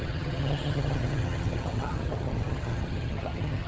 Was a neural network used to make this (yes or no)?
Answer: yes